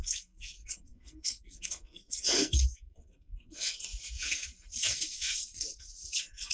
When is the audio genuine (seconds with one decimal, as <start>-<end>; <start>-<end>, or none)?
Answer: none